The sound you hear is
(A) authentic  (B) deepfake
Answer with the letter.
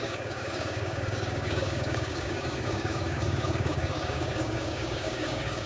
B